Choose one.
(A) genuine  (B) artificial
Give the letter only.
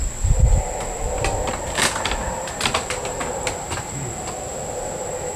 A